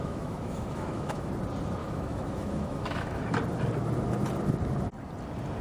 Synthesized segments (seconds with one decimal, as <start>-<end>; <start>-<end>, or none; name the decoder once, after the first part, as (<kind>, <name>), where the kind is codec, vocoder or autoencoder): 0.0-1.3 (autoencoder, DAC-VAE); 1.8-3.3